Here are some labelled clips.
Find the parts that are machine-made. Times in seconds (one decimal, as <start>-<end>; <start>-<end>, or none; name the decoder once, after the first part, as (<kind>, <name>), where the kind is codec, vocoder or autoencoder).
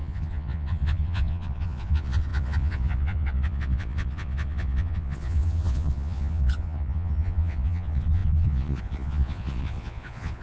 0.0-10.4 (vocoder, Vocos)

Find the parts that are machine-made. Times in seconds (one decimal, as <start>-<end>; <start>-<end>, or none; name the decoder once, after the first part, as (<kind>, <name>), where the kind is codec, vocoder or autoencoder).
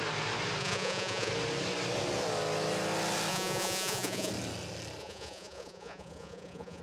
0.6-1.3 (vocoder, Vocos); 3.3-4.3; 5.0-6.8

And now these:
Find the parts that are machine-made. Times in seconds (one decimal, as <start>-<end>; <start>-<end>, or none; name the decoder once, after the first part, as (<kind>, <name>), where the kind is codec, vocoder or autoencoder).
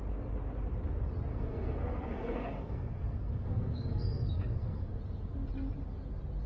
1.3-5.0 (codec, SNAC)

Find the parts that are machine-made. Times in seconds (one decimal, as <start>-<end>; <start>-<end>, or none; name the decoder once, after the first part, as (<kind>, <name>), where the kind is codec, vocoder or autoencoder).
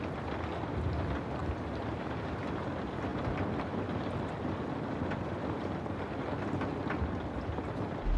1.4-2.7 (vocoder, BigVGAN v2)